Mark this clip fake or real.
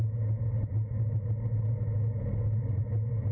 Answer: real